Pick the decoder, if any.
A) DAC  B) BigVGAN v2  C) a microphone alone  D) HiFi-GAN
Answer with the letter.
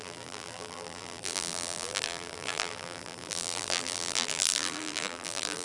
B